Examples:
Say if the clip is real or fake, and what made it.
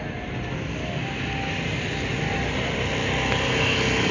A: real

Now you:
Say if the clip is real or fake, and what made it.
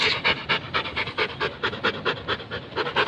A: real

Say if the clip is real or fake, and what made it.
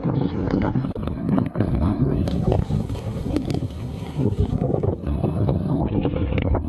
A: fake, codec, SNAC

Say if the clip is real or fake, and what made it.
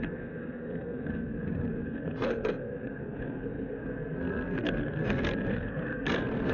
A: fake, codec, SNAC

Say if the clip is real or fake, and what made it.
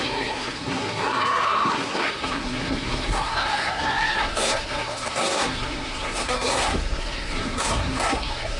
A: fake, codec, SNAC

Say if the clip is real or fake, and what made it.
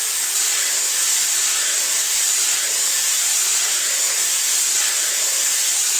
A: real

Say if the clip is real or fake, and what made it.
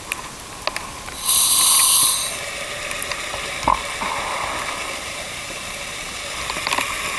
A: real